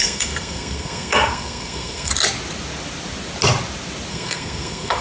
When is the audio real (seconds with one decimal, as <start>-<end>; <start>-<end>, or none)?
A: 2.1-4.1